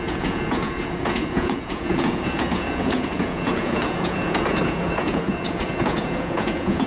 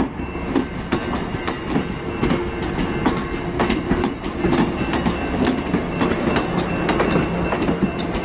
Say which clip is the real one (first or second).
second